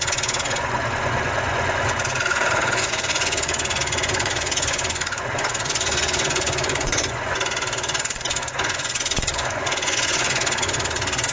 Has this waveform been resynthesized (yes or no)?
yes